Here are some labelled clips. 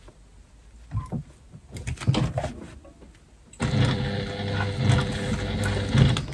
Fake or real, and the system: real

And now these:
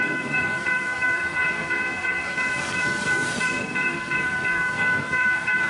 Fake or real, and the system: fake, codec, SNAC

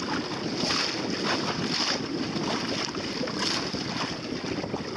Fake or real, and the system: real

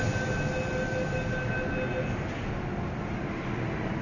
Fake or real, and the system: real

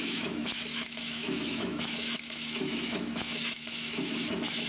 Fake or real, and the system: fake, autoencoder, DAC-VAE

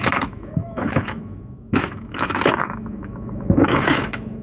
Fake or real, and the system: fake, autoencoder, DAC-VAE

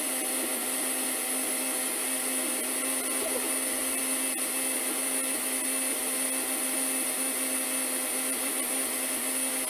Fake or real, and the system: real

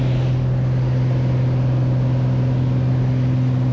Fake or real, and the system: real